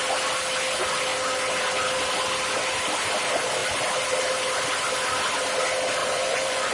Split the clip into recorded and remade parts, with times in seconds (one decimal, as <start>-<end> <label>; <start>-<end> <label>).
0.0-6.0 recorded; 6.0-6.7 remade